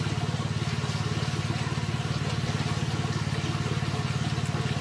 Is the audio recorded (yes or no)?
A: yes